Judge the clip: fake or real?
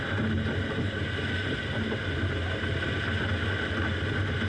real